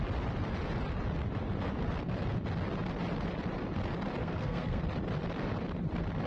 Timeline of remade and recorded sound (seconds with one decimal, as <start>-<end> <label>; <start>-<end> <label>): 0.0-4.2 recorded; 4.2-4.8 remade; 4.8-6.3 recorded